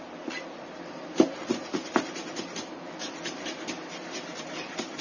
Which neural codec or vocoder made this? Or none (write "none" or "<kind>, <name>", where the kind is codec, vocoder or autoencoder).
none